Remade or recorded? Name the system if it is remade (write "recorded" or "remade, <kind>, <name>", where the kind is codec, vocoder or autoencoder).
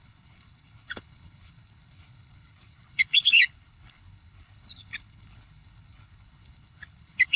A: remade, codec, HILCodec